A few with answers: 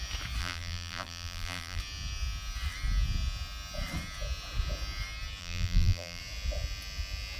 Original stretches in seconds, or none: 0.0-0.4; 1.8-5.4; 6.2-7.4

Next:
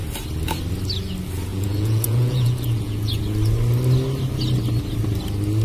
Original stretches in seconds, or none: 0.0-1.5; 3.2-5.6